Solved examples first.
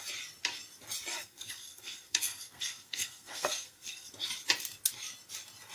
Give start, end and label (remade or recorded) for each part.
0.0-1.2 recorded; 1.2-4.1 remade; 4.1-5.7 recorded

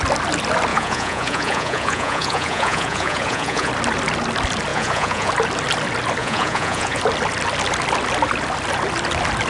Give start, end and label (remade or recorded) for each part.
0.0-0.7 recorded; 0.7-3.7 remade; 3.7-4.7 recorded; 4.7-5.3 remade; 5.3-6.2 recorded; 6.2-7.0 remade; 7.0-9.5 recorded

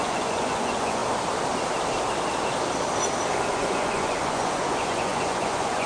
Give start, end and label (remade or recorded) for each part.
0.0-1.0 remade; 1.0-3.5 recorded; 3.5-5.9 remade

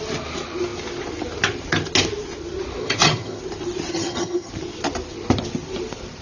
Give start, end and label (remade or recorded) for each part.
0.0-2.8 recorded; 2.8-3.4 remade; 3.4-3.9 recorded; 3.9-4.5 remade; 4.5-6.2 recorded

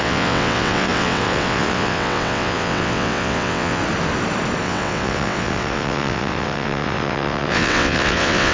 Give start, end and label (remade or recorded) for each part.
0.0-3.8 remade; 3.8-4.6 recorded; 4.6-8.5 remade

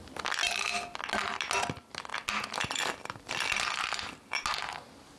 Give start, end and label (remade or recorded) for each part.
0.0-5.2 recorded